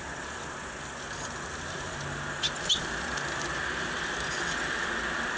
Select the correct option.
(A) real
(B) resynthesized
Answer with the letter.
A